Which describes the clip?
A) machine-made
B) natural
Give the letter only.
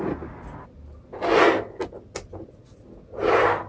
B